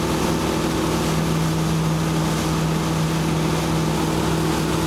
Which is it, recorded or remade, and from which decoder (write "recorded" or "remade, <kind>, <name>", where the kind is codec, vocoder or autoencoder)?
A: recorded